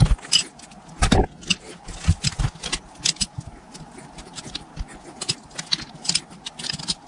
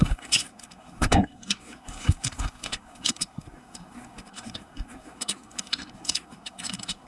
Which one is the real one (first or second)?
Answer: first